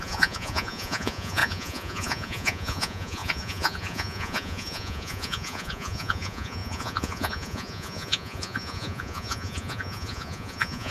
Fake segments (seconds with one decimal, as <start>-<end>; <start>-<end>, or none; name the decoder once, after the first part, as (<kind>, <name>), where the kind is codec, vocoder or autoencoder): 0.0-10.9 (vocoder, Vocos)